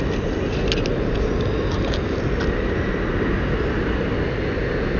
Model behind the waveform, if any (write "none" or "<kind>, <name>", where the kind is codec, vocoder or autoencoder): none